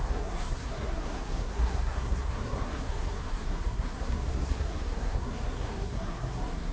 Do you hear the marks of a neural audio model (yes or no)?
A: yes